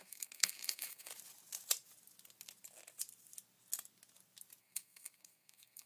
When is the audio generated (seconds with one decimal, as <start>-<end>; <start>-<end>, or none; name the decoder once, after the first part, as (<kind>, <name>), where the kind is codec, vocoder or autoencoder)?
0.0-1.1 (codec, SNAC); 4.6-5.9